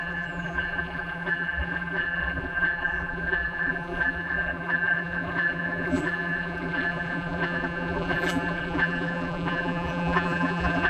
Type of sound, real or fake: fake